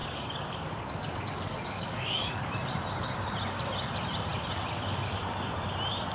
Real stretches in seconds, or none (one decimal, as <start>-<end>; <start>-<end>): 2.5-6.1